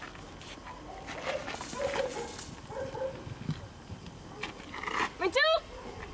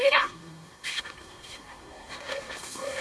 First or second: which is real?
first